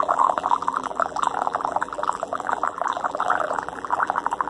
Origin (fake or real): fake